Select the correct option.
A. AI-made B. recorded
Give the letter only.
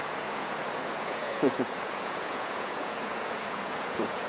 A